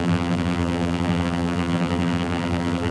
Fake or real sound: fake